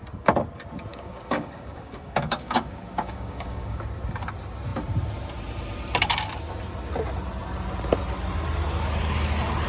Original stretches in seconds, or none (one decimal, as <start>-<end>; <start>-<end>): 0.0-0.9; 3.8-9.7